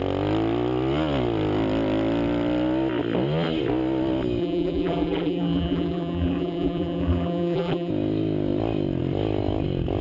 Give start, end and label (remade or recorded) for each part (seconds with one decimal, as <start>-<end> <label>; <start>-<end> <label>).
0.0-4.4 recorded; 4.4-7.9 remade; 7.9-10.0 recorded